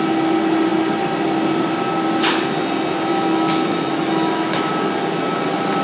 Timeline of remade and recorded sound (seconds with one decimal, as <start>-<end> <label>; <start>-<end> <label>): 0.0-3.1 recorded; 3.1-4.7 remade; 4.7-5.8 recorded